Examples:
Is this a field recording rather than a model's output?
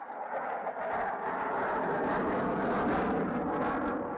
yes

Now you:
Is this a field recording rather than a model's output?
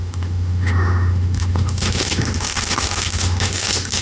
no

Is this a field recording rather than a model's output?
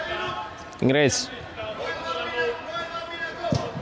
yes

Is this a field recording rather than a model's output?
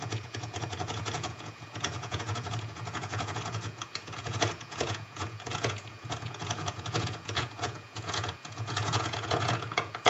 no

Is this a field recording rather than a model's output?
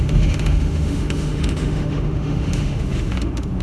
no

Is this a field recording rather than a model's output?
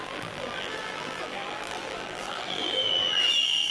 no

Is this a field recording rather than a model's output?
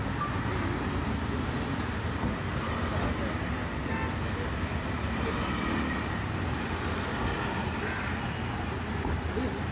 yes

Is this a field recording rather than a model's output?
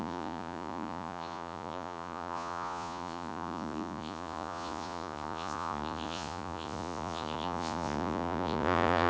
no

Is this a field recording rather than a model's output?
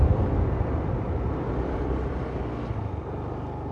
yes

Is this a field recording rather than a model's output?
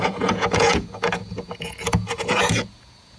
no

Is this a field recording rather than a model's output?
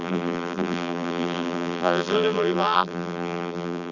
no